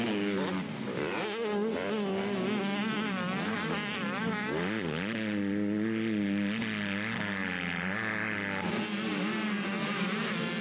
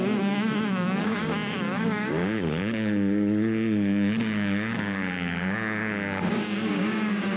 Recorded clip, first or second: first